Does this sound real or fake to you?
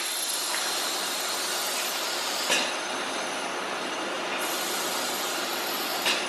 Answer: real